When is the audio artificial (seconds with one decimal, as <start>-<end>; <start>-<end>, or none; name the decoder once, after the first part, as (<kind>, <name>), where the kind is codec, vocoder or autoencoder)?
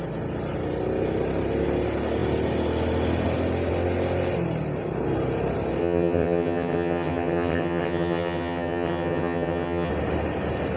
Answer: 5.8-9.9 (vocoder, HiFi-GAN)